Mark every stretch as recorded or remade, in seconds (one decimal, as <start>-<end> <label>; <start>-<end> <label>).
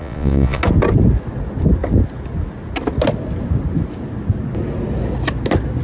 0.0-0.6 remade; 0.6-5.8 recorded